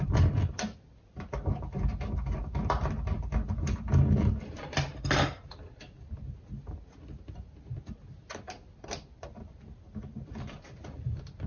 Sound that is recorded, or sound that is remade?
recorded